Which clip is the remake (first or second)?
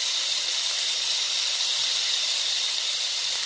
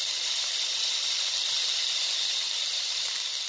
first